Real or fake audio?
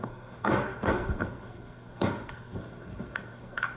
fake